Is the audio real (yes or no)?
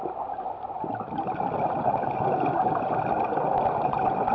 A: yes